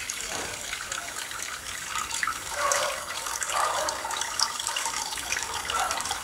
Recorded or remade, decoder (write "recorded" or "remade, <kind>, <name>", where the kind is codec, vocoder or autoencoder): remade, codec, DAC